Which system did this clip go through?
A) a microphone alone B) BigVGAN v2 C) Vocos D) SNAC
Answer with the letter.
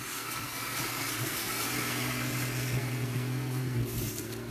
D